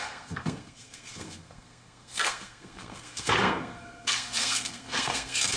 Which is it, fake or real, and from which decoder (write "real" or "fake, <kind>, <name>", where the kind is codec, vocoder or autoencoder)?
fake, codec, SNAC